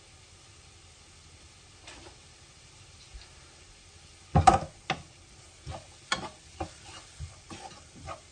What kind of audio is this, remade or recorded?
recorded